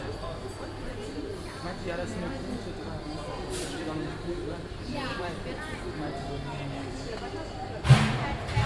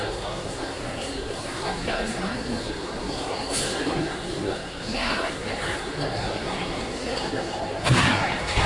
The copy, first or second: second